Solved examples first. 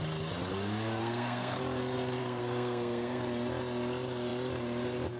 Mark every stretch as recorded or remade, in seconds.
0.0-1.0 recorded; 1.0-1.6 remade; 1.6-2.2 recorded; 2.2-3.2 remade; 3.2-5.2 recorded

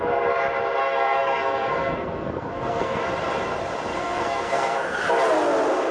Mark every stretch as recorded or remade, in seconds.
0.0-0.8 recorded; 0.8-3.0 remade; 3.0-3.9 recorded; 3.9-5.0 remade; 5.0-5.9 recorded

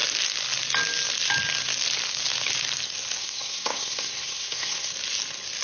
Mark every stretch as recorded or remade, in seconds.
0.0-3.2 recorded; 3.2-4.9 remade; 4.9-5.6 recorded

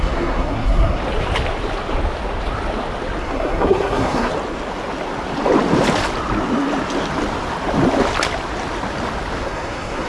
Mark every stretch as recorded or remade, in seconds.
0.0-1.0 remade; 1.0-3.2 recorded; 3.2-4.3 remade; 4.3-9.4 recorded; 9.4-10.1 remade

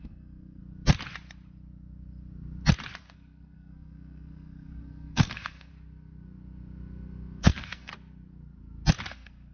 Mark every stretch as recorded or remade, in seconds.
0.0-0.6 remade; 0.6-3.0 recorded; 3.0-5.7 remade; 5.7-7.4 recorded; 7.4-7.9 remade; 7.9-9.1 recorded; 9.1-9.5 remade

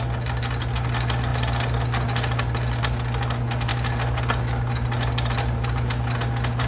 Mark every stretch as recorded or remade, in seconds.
0.0-6.7 recorded